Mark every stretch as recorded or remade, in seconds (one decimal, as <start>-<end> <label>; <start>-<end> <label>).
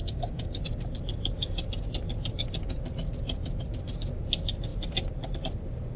0.0-0.6 remade; 0.6-6.0 recorded